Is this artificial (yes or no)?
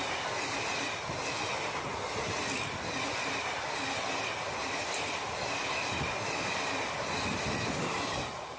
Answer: no